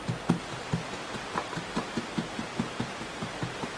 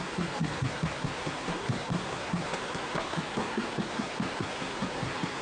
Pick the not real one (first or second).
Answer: second